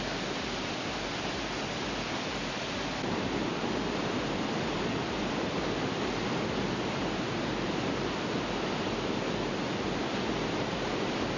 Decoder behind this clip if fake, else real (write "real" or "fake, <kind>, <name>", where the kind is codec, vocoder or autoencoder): real